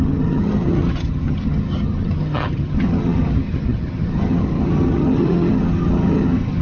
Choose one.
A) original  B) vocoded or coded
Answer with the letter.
B